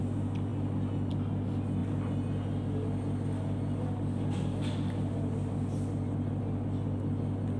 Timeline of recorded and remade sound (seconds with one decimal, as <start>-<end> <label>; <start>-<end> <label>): 0.0-7.6 recorded